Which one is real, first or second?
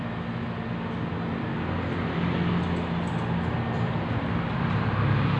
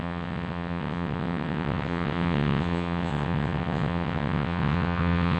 first